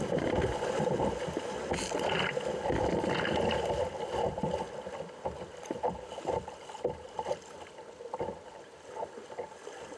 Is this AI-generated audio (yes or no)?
no